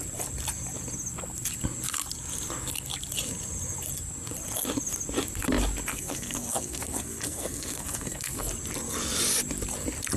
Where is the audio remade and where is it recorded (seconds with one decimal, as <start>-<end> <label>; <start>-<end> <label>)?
0.0-5.9 recorded; 5.9-8.4 remade; 8.4-10.2 recorded